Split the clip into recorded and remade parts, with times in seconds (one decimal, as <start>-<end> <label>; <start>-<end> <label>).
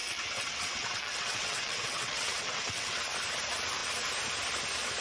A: 0.0-3.0 remade; 3.0-5.0 recorded